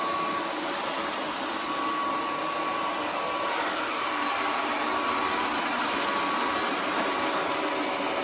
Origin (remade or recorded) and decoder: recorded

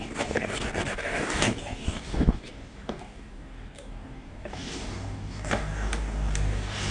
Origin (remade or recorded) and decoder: remade, codec, DAC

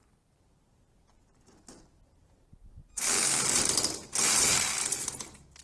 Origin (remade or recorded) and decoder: recorded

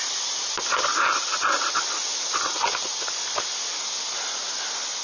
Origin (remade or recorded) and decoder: recorded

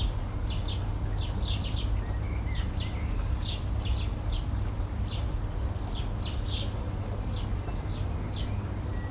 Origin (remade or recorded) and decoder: recorded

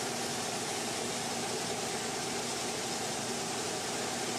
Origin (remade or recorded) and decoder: recorded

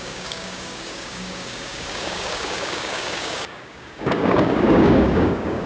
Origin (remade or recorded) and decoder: remade, codec, DAC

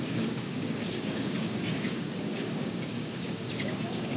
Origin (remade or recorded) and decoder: remade, codec, DAC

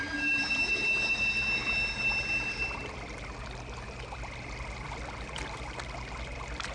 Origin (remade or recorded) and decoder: recorded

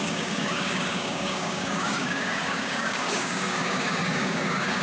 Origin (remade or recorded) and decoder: remade, codec, DAC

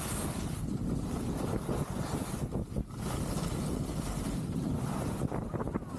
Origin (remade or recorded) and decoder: recorded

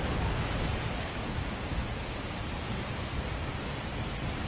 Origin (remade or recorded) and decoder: recorded